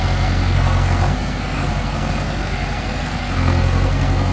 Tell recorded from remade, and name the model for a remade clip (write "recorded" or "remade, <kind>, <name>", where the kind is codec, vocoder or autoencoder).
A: remade, codec, SNAC